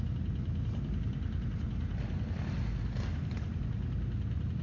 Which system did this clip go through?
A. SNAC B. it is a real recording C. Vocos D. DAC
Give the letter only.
B